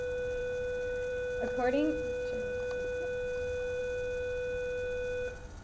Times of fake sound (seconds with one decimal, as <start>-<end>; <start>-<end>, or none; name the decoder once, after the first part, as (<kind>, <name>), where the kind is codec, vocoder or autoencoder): none